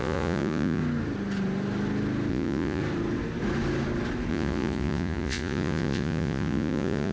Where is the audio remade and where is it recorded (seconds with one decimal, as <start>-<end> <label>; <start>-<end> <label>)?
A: 0.0-0.8 remade; 0.8-2.3 recorded; 2.3-2.8 remade; 2.8-4.3 recorded; 4.3-7.1 remade

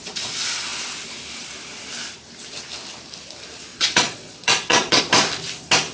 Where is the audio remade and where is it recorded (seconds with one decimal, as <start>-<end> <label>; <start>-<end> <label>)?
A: 0.0-3.7 recorded; 3.7-5.0 remade; 5.0-5.9 recorded

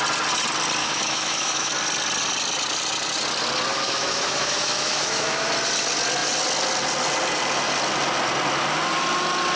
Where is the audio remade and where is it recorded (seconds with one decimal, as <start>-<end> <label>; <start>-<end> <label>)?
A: 0.0-0.8 recorded; 0.8-1.7 remade; 1.7-3.7 recorded; 3.7-5.5 remade; 5.5-9.6 recorded

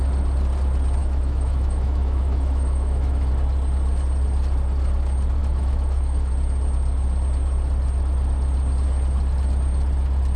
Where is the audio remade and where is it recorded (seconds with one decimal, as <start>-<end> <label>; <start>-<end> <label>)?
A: 0.0-1.0 recorded; 1.0-3.3 remade; 3.3-5.4 recorded; 5.4-6.3 remade; 6.3-10.4 recorded

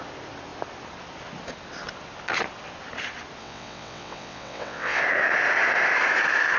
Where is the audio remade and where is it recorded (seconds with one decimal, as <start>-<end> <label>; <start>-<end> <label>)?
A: 0.0-3.4 recorded; 3.4-5.0 remade; 5.0-6.6 recorded